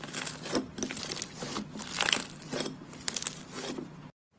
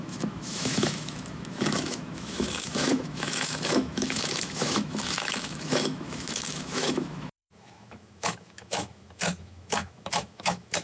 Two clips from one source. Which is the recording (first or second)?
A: first